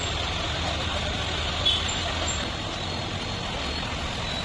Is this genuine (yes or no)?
yes